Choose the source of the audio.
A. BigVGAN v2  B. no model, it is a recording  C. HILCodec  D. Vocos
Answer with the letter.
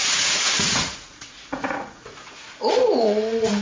D